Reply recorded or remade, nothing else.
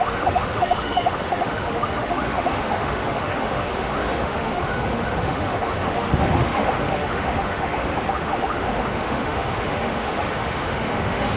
remade